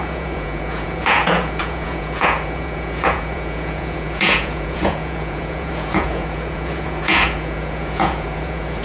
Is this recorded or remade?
remade